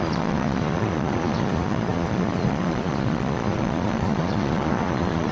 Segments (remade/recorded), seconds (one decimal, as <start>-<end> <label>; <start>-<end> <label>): 0.0-5.3 remade